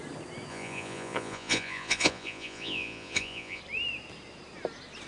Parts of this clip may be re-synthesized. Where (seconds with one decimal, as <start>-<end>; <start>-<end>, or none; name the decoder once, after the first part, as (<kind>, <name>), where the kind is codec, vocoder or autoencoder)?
0.5-3.6 (vocoder, Vocos)